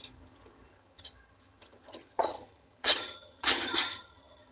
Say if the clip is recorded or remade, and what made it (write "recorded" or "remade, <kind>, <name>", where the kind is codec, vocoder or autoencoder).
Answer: remade, vocoder, HiFi-GAN